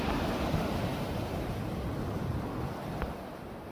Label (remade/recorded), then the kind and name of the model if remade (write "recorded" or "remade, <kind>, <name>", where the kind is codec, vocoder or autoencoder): recorded